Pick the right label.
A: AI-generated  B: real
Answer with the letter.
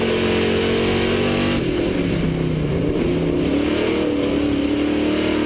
B